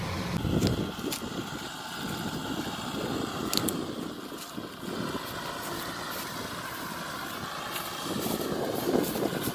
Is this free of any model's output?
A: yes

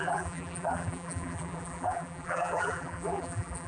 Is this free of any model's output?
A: no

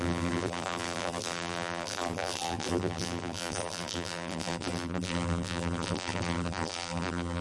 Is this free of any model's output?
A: no